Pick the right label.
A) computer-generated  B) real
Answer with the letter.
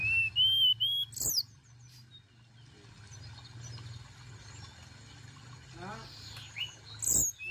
B